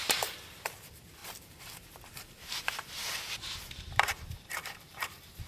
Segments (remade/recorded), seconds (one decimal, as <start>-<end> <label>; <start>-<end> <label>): 0.0-5.5 remade